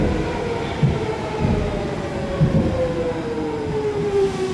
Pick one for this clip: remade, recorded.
recorded